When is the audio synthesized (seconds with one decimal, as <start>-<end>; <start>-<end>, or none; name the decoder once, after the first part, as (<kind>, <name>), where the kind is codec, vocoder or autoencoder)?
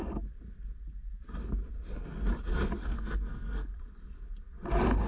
2.8-3.7 (codec, SNAC)